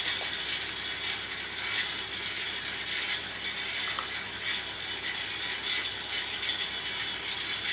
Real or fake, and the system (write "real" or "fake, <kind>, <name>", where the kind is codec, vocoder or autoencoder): real